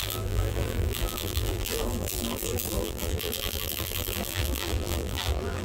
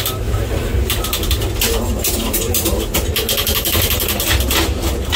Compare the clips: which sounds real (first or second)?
second